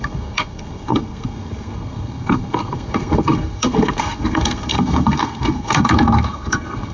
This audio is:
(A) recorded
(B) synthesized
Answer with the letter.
B